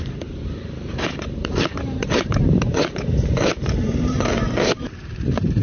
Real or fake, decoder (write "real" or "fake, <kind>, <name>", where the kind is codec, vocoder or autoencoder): fake, vocoder, BigVGAN v2